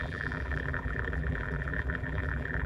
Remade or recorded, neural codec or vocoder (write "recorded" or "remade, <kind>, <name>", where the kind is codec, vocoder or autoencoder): remade, vocoder, BigVGAN v2